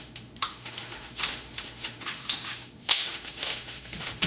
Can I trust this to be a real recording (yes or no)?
no